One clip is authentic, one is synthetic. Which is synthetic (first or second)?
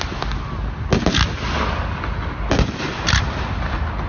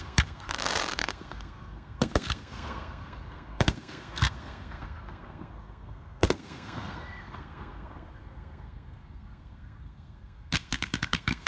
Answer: second